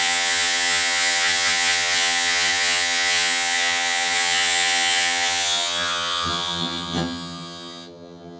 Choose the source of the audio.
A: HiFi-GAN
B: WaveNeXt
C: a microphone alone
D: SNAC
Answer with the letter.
A